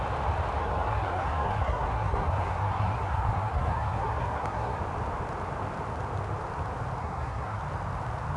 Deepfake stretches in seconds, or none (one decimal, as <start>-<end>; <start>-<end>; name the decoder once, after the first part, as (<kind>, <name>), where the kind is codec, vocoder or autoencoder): 0.6-4.8 (codec, SNAC); 7.0-7.6